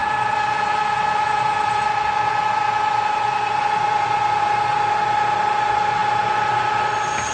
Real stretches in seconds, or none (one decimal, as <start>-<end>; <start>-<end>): 4.4-7.3